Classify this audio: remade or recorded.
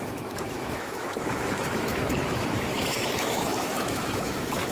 remade